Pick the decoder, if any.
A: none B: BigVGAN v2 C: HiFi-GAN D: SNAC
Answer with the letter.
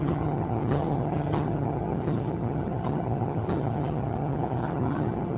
C